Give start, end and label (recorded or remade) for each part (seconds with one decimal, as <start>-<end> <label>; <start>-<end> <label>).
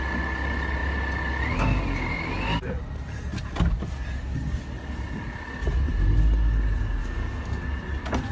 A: 0.0-7.0 recorded; 7.0-7.6 remade; 7.6-8.3 recorded